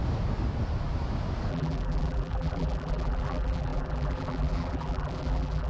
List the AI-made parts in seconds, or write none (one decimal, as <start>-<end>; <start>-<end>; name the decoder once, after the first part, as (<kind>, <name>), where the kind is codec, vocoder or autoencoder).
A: 1.5-5.7 (vocoder, BigVGAN v2)